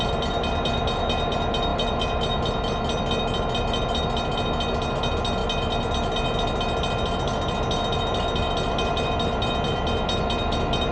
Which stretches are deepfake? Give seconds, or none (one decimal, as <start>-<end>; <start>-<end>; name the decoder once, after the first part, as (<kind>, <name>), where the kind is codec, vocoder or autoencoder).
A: none

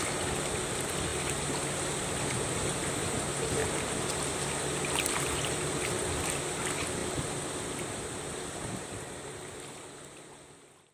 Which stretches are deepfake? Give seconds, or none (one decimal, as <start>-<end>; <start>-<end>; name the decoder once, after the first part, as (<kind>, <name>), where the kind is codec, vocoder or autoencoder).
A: 1.1-2.9 (vocoder, BigVGAN v2); 3.6-4.2; 7.0-8.7

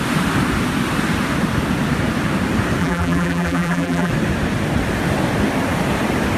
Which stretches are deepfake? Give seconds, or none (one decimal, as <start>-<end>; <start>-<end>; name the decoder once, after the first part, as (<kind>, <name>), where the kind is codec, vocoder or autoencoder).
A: 2.8-4.1 (vocoder, BigVGAN v2)

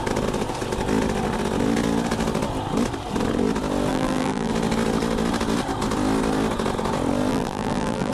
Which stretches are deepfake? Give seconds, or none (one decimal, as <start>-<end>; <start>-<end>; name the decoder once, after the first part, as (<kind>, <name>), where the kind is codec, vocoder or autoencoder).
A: 3.9-4.5 (vocoder, BigVGAN v2); 7.3-8.1